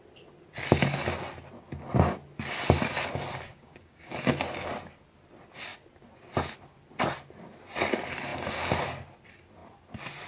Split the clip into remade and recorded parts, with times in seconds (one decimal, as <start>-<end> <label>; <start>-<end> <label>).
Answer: 0.0-3.5 recorded; 3.5-4.3 remade; 4.3-10.3 recorded